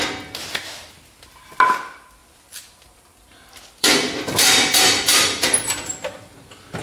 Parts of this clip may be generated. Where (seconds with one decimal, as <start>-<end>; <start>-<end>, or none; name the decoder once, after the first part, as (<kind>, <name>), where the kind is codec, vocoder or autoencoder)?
2.2-6.3 (vocoder, BigVGAN v2)